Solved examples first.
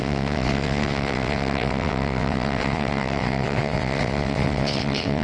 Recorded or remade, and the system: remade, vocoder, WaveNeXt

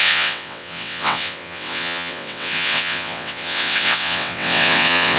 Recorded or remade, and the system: remade, vocoder, WaveNeXt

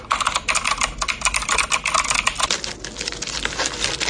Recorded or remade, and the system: recorded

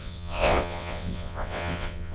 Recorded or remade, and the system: remade, vocoder, WaveNeXt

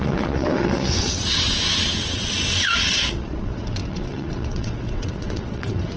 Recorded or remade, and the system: remade, vocoder, WaveNeXt